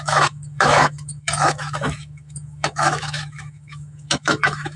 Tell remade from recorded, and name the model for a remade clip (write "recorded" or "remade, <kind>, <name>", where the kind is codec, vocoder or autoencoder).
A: remade, autoencoder, DAC-VAE